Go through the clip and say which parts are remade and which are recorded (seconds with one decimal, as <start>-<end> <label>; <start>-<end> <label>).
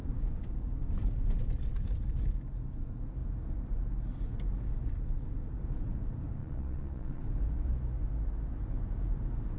0.0-6.4 recorded; 6.4-7.2 remade; 7.2-9.6 recorded